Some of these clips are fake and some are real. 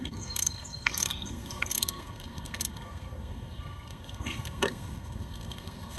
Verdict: fake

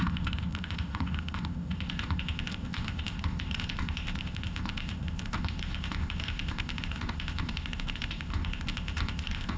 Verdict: fake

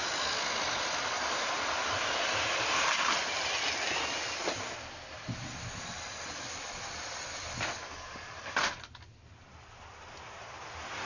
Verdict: real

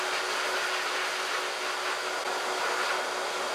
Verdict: real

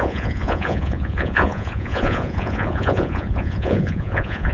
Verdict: fake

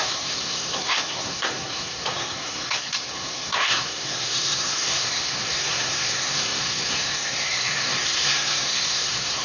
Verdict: fake